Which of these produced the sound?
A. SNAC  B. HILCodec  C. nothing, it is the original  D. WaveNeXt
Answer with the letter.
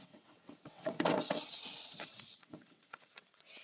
D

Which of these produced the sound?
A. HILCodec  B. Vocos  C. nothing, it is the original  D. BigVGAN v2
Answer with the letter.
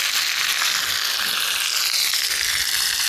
C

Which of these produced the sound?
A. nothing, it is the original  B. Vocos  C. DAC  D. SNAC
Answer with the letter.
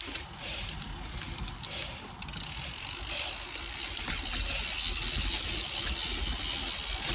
A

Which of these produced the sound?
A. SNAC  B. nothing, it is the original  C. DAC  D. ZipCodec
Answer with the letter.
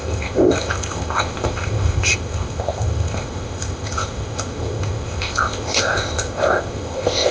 D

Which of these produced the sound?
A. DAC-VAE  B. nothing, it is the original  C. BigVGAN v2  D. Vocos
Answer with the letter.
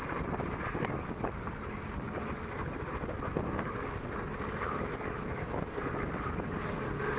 B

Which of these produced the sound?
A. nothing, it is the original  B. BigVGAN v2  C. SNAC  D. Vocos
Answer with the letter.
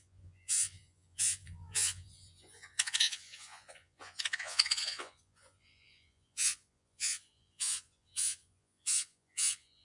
D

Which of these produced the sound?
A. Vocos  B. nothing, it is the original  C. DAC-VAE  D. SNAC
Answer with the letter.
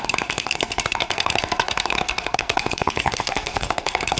D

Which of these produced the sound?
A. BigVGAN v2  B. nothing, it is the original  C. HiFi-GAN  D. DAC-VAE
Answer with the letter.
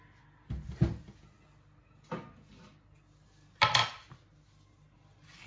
B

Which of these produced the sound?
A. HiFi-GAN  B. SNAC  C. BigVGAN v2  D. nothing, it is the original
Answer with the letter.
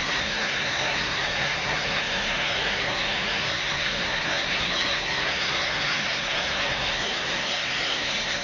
B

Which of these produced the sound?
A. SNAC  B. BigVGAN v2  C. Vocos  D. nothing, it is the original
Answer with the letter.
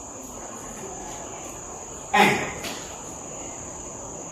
B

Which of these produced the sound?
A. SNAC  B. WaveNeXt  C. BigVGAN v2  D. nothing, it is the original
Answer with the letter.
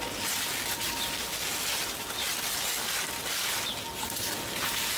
D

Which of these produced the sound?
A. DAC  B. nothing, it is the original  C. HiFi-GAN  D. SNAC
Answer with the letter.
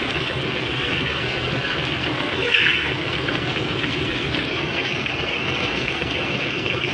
D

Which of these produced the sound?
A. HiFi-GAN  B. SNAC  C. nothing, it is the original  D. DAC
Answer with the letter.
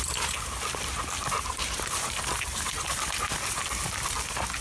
C